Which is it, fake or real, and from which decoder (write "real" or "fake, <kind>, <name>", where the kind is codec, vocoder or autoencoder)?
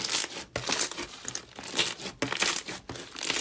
real